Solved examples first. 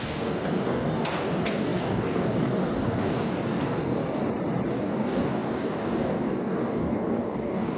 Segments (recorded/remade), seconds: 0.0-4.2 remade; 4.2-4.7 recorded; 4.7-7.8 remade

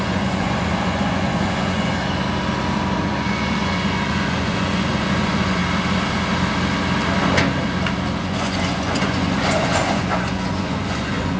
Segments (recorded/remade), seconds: 0.0-1.9 remade; 1.9-3.0 recorded; 3.0-5.6 remade; 5.6-8.2 recorded; 8.2-11.4 remade

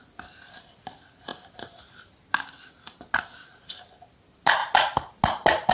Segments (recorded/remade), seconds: 0.0-5.7 recorded

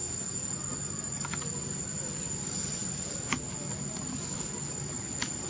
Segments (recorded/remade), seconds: 0.0-5.5 recorded

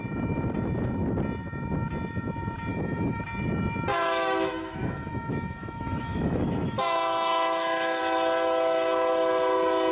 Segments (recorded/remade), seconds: 0.0-2.7 recorded; 2.7-3.2 remade; 3.2-3.9 recorded; 3.9-8.0 remade; 8.0-9.9 recorded